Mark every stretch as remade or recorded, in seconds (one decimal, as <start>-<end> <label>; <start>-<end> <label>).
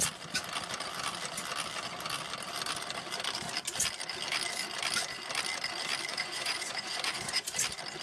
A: 0.0-6.1 recorded; 6.1-7.5 remade; 7.5-8.0 recorded